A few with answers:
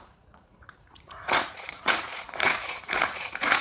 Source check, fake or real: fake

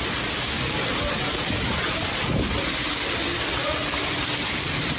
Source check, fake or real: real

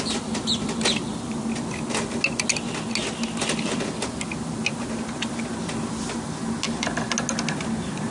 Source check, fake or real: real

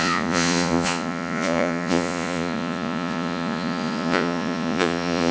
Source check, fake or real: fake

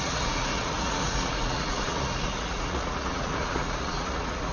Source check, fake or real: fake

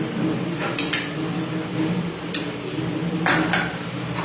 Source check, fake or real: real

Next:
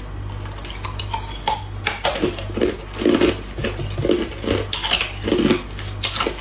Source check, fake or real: real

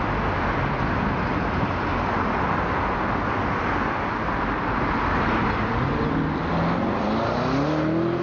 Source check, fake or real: real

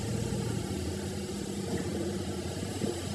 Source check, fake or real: real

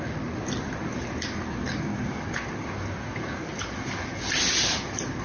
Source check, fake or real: real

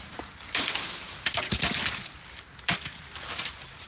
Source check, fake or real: real